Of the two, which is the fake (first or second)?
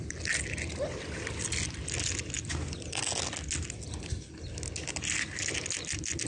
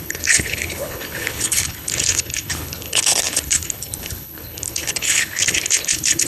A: second